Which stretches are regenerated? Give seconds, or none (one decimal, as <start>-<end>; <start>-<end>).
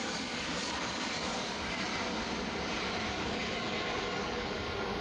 0.0-1.9; 3.1-5.0